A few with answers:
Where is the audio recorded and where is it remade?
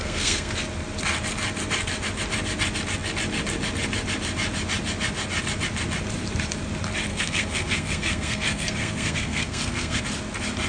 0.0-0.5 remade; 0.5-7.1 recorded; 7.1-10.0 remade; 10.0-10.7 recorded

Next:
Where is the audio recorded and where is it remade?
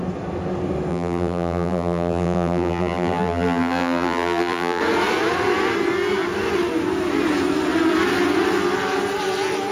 0.0-0.9 recorded; 0.9-4.8 remade; 4.8-9.7 recorded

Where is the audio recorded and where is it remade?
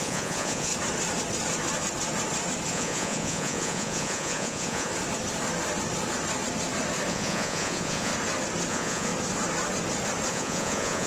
0.0-0.7 remade; 0.7-2.7 recorded; 2.7-4.9 remade; 4.9-7.1 recorded; 7.1-8.1 remade; 8.1-8.7 recorded; 8.7-9.1 remade; 9.1-10.3 recorded; 10.3-11.1 remade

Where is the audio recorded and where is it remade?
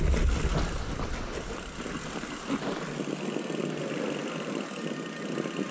0.0-5.7 recorded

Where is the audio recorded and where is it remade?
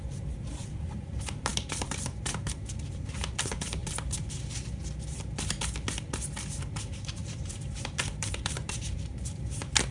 0.0-3.8 remade; 3.8-6.8 recorded; 6.8-9.9 remade